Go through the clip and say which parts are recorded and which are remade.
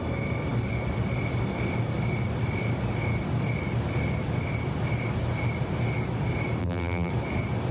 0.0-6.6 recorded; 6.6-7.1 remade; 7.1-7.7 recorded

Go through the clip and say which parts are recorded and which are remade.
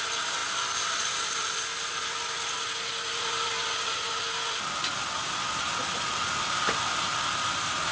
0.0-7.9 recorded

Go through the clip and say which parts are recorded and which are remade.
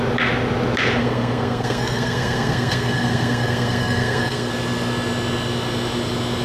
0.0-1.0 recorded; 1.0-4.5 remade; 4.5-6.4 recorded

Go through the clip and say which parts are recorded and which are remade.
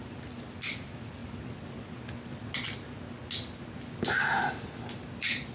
0.0-1.2 remade; 1.2-4.5 recorded; 4.5-5.5 remade